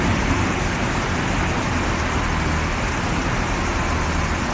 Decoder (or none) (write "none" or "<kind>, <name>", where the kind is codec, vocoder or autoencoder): none